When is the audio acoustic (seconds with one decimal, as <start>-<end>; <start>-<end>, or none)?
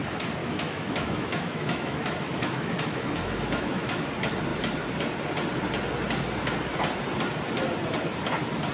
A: 0.0-0.4; 4.1-8.7